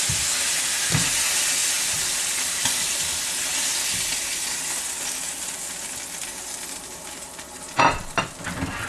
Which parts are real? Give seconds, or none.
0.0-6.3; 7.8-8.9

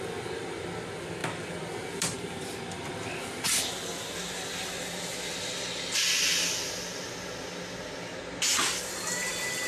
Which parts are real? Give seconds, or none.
0.0-1.2; 5.3-9.7

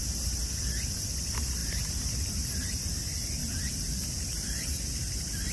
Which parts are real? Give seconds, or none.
0.0-0.6; 1.6-2.1

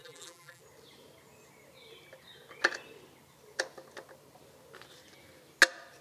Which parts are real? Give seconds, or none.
0.6-6.0

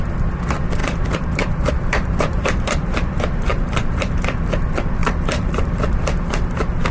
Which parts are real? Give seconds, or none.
0.0-0.8; 2.6-3.5; 4.5-5.0; 6.0-6.9

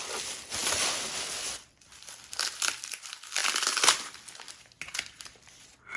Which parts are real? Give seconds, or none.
3.4-5.0